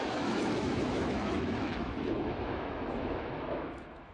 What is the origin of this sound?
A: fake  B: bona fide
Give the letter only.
A